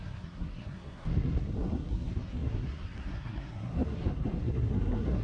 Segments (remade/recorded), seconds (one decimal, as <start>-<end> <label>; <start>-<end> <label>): 0.0-5.2 remade